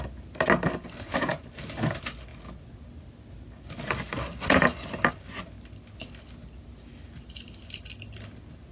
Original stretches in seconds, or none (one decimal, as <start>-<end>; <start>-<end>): 0.0-8.7